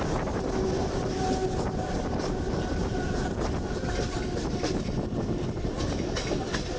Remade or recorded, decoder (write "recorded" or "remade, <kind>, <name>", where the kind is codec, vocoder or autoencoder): recorded